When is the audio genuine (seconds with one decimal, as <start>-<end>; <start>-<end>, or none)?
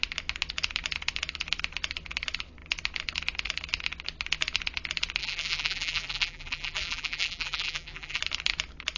0.0-5.2; 8.2-9.0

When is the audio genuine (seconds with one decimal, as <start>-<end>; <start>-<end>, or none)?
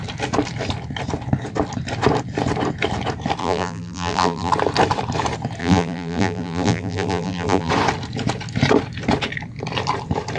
0.0-3.4; 4.5-5.6; 7.7-10.4